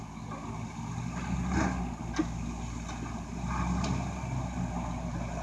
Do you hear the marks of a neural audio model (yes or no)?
no